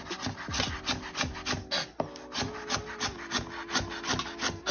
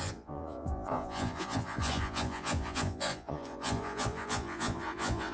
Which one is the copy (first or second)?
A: second